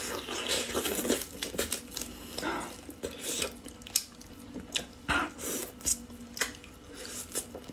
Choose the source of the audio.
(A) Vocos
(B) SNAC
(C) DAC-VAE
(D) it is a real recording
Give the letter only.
D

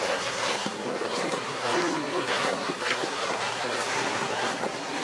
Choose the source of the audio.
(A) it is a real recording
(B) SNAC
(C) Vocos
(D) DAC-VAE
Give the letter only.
B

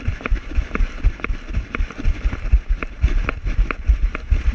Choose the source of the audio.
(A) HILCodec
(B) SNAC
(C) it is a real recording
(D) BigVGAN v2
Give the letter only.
D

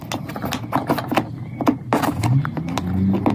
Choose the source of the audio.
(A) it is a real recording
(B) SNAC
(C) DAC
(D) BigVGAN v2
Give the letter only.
A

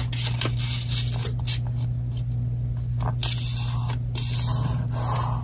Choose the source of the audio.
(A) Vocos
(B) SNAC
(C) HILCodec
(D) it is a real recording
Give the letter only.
D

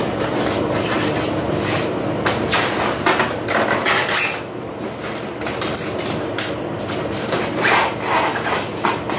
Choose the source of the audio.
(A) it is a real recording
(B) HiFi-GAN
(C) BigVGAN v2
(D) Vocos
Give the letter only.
A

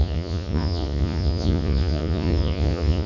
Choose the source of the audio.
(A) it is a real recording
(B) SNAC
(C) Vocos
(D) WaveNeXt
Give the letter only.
C